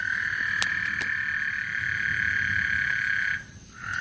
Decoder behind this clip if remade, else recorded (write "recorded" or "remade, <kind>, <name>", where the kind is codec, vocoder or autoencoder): recorded